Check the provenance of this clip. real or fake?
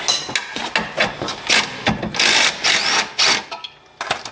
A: real